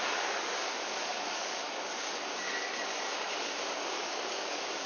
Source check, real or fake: fake